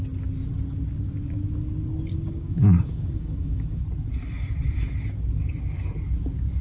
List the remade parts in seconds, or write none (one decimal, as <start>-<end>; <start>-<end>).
2.1-3.8

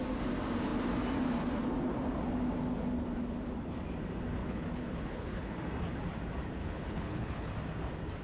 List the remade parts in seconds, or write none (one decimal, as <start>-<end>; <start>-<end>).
4.4-5.6; 6.6-7.5

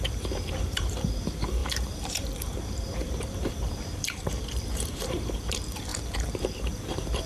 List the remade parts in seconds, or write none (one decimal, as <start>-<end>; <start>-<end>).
0.0-5.9; 6.4-7.3